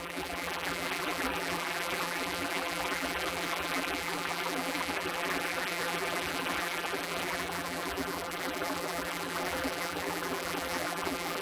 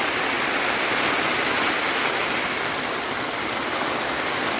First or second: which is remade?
first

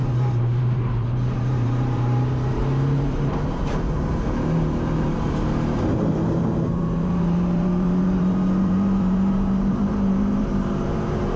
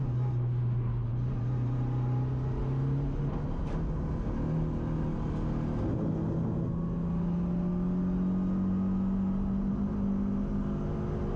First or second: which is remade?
first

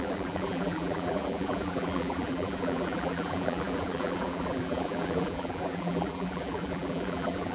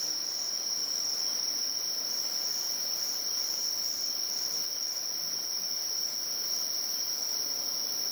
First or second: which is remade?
first